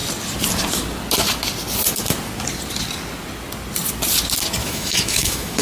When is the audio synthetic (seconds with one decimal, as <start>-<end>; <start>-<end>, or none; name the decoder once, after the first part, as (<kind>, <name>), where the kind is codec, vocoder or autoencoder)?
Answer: 4.6-5.6 (autoencoder, DAC-VAE)